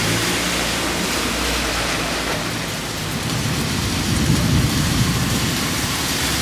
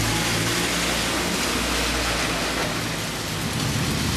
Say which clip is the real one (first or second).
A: second